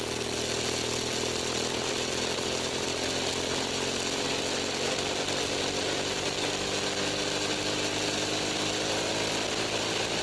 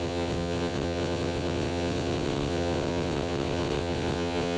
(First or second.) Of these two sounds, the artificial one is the second